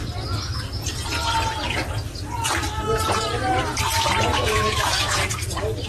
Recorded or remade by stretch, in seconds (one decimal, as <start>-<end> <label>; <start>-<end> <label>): 0.0-4.3 recorded; 4.3-5.2 remade; 5.2-5.9 recorded